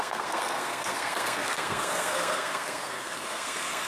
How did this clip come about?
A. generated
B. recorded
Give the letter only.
A